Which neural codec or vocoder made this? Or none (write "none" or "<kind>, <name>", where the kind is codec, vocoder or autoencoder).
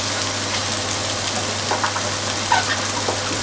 none